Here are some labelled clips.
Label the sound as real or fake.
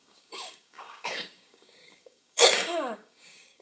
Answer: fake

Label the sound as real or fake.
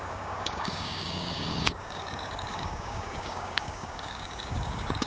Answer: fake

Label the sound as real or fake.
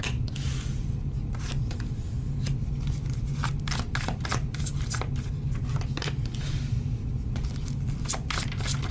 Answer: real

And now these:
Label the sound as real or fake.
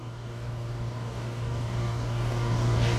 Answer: fake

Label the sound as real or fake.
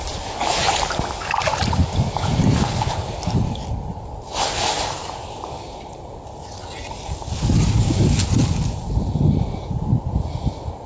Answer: real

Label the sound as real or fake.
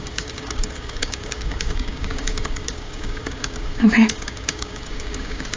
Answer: fake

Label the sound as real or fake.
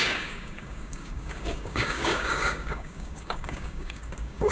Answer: fake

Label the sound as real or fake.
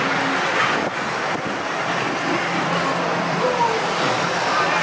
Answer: real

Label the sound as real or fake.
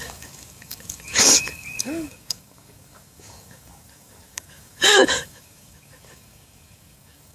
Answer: fake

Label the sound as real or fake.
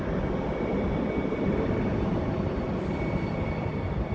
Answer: real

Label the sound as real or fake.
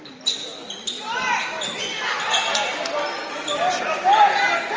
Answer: real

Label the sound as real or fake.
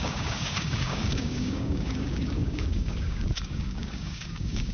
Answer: fake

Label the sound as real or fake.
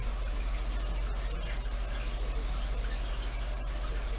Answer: real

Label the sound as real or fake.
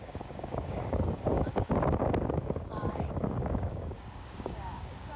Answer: fake